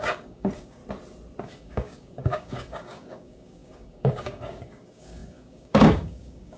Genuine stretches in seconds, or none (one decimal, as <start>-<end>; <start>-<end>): 0.8-1.4